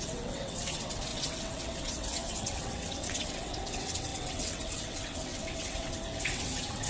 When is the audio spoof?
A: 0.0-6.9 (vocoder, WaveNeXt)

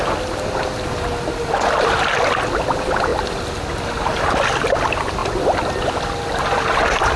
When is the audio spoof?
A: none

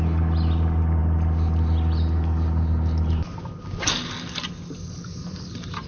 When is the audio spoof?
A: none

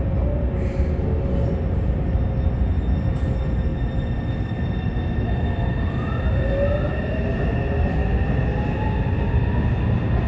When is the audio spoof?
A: none

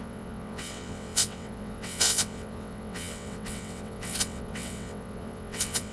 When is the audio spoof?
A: 0.0-5.9 (vocoder, WaveNeXt)

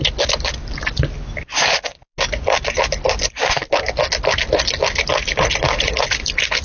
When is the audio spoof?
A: none

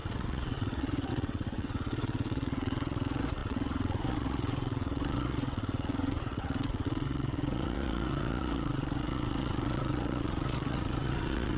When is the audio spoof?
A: 0.0-11.6 (vocoder, WaveNeXt)

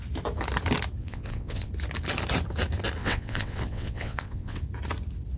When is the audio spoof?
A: 1.0-1.7 (vocoder, WaveNeXt); 3.0-4.6